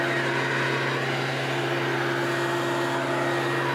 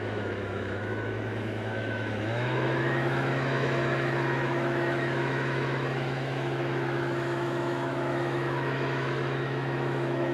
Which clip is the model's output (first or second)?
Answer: second